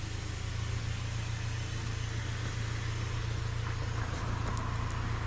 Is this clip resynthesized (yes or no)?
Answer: no